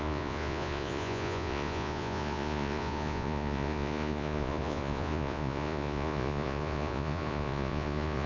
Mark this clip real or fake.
fake